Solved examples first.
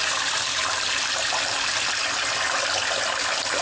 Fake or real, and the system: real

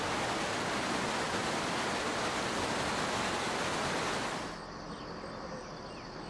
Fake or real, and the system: real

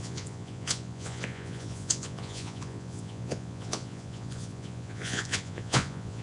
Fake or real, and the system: fake, vocoder, Vocos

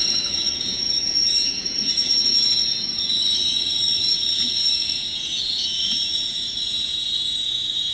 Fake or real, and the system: fake, vocoder, Vocos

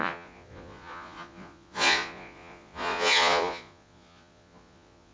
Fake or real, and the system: fake, vocoder, Vocos